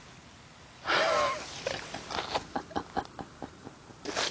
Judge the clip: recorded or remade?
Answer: recorded